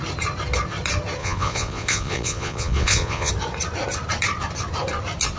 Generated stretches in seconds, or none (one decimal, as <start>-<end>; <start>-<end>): 1.2-3.3